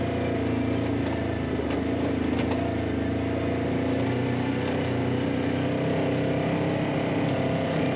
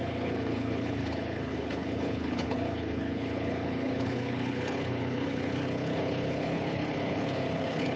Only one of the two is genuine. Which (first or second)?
first